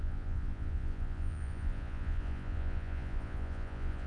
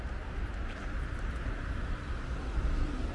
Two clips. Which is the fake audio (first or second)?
first